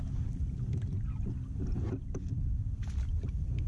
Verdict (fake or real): real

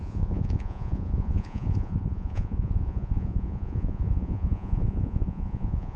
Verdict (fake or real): fake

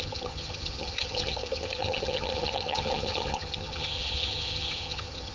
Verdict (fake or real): fake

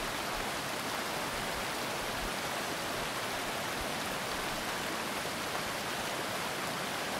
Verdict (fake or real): real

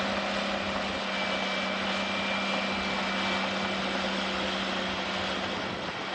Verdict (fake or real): real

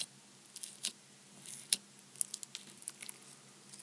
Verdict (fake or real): real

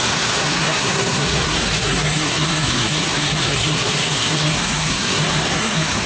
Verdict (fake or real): fake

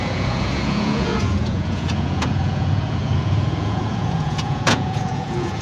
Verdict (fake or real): fake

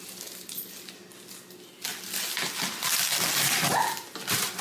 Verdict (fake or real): real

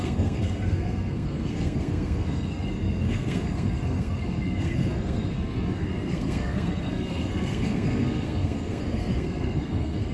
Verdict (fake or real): fake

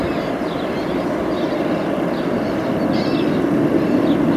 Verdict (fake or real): real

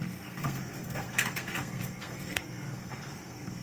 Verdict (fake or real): fake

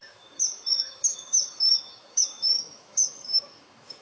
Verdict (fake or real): fake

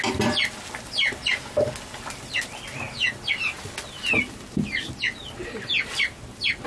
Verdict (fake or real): real